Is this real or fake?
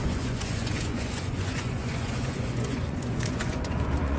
fake